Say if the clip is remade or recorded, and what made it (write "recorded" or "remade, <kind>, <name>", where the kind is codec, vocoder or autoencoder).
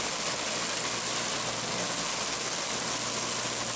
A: recorded